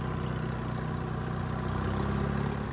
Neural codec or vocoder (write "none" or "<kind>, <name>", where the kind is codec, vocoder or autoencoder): none